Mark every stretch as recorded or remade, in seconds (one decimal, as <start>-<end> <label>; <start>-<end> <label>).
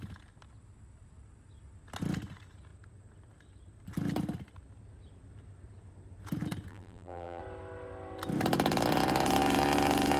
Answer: 0.0-6.7 recorded; 6.7-7.4 remade; 7.4-10.2 recorded